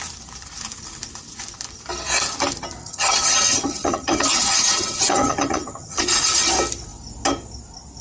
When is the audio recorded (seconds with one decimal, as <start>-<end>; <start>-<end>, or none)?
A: 0.0-2.8; 6.0-8.0